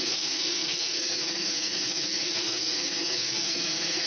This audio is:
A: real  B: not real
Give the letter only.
B